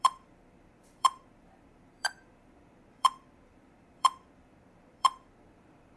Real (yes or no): no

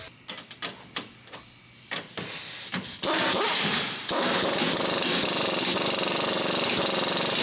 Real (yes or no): yes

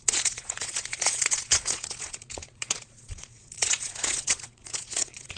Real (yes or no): no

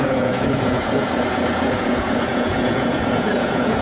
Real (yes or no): no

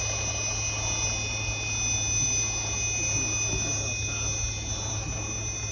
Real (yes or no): yes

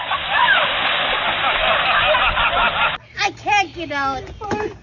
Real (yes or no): yes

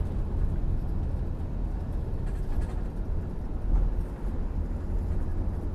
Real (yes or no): yes